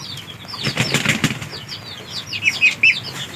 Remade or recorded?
recorded